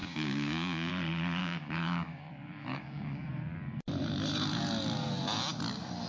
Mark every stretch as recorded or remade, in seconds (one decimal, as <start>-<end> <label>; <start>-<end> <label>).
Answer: 0.0-0.9 remade; 0.9-1.4 recorded; 1.4-2.3 remade; 2.3-2.7 recorded; 2.7-3.3 remade; 3.3-6.1 recorded